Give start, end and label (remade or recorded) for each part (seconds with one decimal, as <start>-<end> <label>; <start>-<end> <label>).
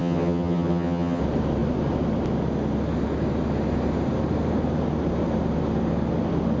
0.0-1.2 remade; 1.2-6.6 recorded